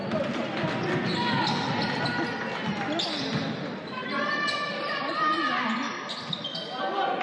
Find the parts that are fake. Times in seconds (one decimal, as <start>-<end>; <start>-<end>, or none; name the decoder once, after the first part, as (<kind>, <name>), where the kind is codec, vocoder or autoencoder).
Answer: 0.0-2.0 (vocoder, BigVGAN v2); 3.3-5.1